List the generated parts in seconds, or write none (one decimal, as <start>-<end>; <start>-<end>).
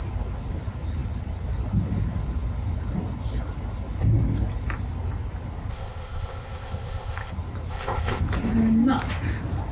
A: 5.7-7.3; 7.7-8.2